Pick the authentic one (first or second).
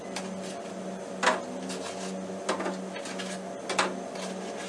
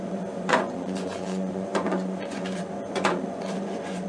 first